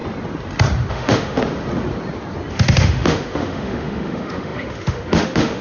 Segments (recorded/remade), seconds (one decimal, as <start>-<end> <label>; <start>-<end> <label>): 0.0-0.9 recorded; 0.9-1.4 remade; 1.4-2.5 recorded; 2.5-5.6 remade